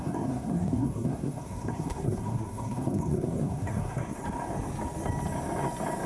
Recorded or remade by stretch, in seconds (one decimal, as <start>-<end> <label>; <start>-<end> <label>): 0.0-4.2 remade; 4.2-6.1 recorded